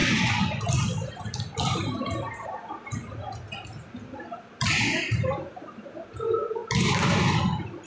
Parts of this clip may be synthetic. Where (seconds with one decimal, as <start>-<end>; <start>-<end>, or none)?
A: 0.0-0.6